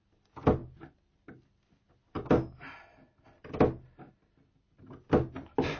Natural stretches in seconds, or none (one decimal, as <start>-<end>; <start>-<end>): 0.0-5.8

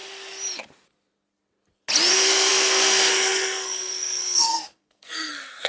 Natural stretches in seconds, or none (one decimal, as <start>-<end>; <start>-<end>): 0.0-2.1

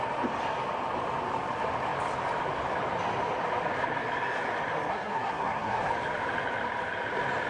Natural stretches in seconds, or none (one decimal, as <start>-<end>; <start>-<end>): 0.0-4.9; 5.9-7.5

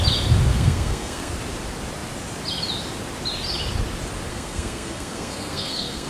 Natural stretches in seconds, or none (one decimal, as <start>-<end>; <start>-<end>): 0.0-0.5; 1.3-4.3

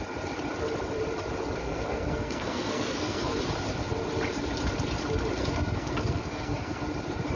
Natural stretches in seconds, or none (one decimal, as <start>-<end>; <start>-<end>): 0.0-1.6; 3.4-5.4; 6.8-7.4

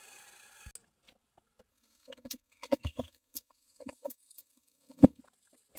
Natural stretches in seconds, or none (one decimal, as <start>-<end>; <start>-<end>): 0.0-1.7; 5.2-5.8

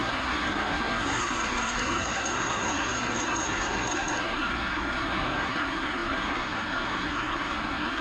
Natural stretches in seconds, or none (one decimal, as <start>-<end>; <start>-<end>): none